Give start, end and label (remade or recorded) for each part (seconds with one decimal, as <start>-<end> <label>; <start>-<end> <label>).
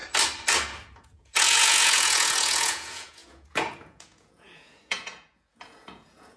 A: 0.0-1.0 recorded; 1.0-6.4 remade